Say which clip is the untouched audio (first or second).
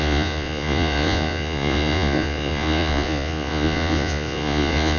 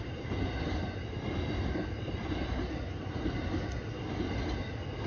second